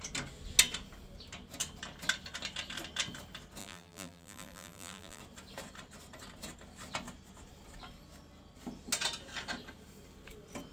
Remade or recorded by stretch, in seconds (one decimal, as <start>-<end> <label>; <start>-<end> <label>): 0.0-3.6 recorded; 3.6-5.2 remade; 5.2-10.7 recorded